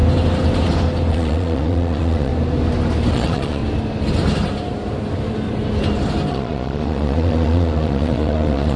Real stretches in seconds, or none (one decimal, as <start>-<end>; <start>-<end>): 0.0-1.1; 2.3-3.1; 3.6-6.3